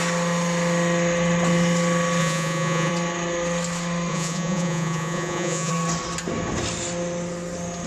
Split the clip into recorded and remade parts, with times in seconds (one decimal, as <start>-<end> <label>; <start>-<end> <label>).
0.0-2.2 recorded; 2.2-2.9 remade; 2.9-4.1 recorded; 4.1-5.7 remade; 5.7-7.9 recorded